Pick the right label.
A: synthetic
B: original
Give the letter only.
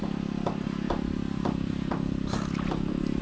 B